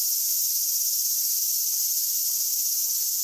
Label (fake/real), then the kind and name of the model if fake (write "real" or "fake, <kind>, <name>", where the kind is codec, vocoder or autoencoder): real